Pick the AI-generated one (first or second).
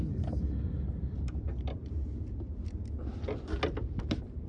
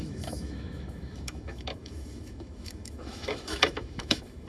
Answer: second